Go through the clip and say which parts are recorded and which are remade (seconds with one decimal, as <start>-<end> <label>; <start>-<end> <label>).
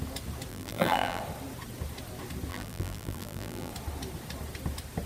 0.0-0.5 recorded; 0.5-1.2 remade; 1.2-2.5 recorded; 2.5-3.7 remade; 3.7-5.1 recorded